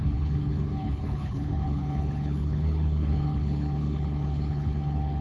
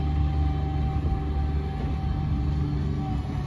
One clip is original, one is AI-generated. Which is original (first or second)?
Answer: second